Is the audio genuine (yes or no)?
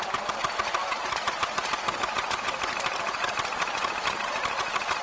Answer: yes